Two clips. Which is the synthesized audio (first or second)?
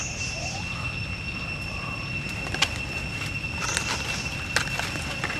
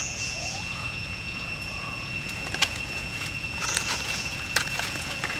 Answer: second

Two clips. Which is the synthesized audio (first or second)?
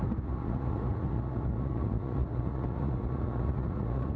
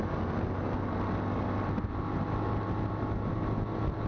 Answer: first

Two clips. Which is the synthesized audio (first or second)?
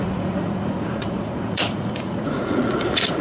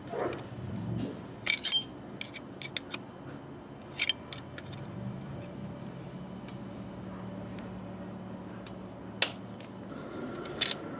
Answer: first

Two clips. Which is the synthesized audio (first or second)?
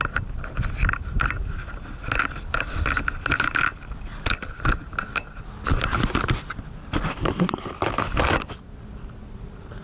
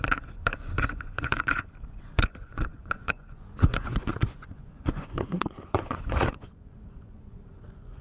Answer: second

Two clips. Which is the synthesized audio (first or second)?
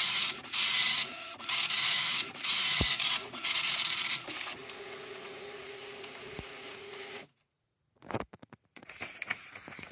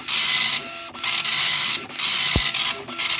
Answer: first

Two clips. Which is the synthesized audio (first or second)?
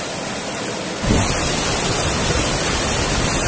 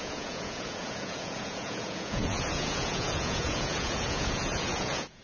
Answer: second